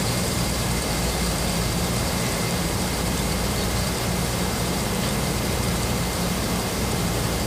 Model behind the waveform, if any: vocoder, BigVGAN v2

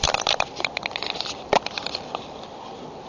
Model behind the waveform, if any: none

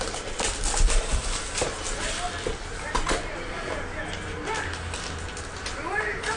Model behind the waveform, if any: none